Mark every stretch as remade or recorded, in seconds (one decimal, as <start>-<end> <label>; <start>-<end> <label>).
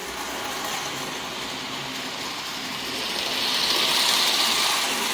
0.0-5.1 recorded